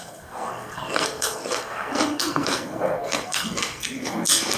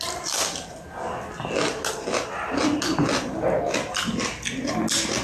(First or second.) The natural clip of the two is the second